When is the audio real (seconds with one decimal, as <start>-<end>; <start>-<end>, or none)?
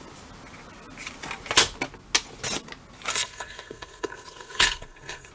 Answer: 0.0-3.1